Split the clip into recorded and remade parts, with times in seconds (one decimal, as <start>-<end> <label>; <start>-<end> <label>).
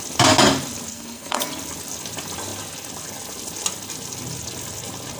0.0-0.9 recorded; 0.9-1.5 remade; 1.5-5.2 recorded